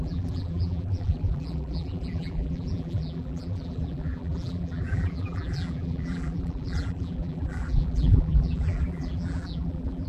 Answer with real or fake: fake